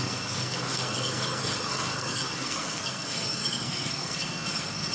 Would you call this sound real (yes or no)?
no